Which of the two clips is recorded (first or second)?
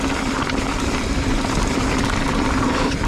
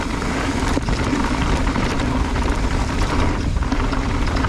first